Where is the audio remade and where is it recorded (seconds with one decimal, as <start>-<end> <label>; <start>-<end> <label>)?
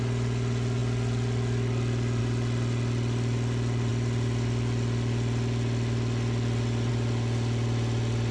0.0-8.3 recorded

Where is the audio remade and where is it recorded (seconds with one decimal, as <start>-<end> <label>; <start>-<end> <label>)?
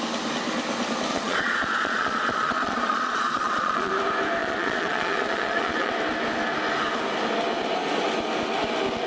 0.0-1.1 recorded; 1.1-3.9 remade; 3.9-4.4 recorded; 4.4-5.9 remade; 5.9-9.1 recorded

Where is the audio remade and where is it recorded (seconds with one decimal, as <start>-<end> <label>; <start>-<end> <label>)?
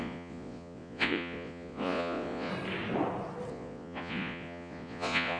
0.0-2.5 remade; 2.5-3.5 recorded; 3.5-5.4 remade